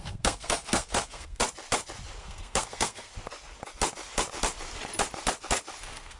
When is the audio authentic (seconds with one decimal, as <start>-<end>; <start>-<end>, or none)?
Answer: 1.4-2.2; 3.1-5.8